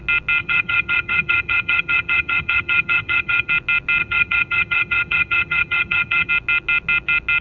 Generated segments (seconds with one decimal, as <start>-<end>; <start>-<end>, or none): 0.4-3.5; 4.0-6.3